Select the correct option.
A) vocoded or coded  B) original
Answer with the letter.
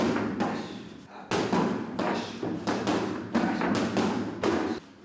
B